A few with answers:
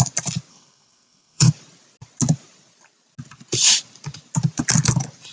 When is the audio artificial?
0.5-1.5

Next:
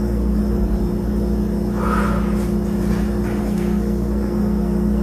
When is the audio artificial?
0.0-0.4; 3.4-5.0

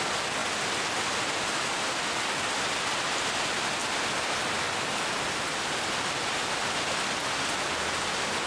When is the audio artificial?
none

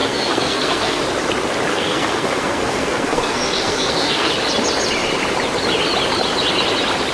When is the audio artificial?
0.0-1.0; 1.7-4.3